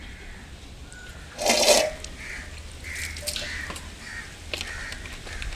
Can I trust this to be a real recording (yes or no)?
yes